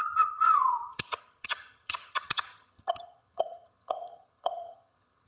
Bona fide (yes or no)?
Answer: no